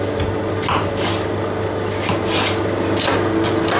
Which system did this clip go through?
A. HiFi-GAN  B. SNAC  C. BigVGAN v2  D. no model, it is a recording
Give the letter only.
D